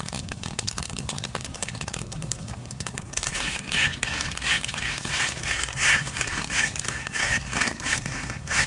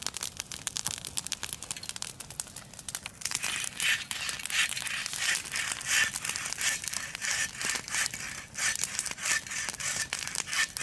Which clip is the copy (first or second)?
first